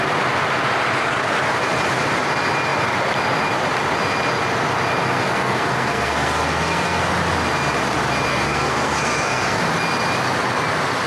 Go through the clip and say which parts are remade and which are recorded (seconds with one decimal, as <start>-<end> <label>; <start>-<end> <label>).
0.0-5.0 recorded; 5.0-7.1 remade; 7.1-8.3 recorded; 8.3-9.6 remade; 9.6-11.1 recorded